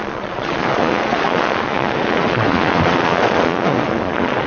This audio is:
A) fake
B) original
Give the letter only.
A